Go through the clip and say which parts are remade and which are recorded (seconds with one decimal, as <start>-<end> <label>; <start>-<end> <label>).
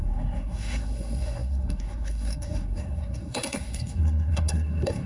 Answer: 0.0-5.1 remade